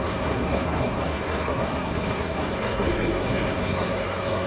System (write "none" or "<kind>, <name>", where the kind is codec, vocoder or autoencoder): codec, SNAC